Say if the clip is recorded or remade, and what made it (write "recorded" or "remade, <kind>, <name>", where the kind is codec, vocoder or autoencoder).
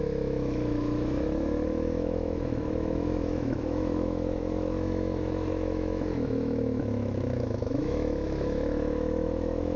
remade, autoencoder, DAC-VAE